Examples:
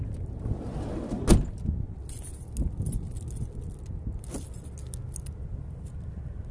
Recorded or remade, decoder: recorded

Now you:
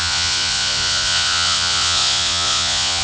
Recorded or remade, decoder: remade, vocoder, Vocos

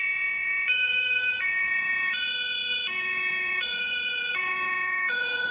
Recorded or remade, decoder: remade, vocoder, Vocos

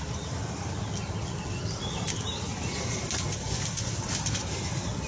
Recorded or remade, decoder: recorded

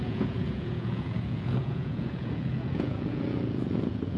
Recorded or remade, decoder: remade, vocoder, Vocos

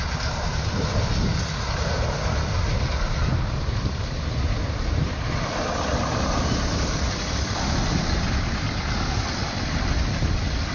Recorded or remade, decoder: recorded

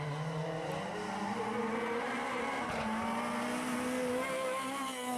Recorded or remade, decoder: recorded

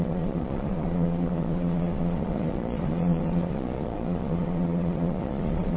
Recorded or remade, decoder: remade, vocoder, Vocos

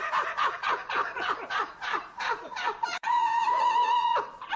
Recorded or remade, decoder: remade, vocoder, Vocos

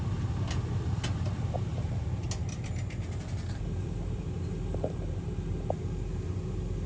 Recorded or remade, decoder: recorded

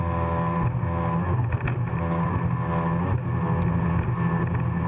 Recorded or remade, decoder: recorded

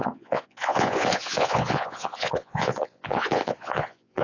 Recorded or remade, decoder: remade, vocoder, Vocos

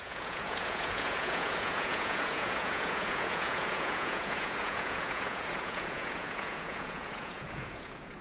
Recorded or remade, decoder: remade, vocoder, Vocos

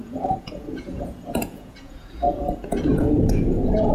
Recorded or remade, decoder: remade, vocoder, Vocos